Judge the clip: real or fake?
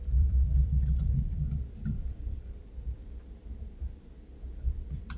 fake